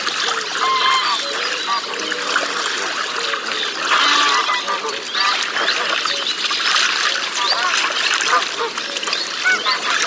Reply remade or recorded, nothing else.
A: recorded